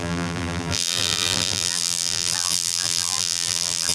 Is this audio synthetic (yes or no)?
yes